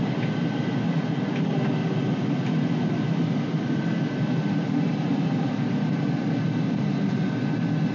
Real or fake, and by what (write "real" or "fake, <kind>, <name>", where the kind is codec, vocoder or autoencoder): real